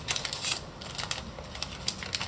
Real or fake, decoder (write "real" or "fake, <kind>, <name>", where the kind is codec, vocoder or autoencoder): real